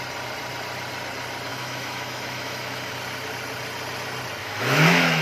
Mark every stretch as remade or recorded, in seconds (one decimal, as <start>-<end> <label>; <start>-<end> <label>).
0.0-1.5 recorded; 1.5-2.9 remade; 2.9-4.4 recorded; 4.4-5.2 remade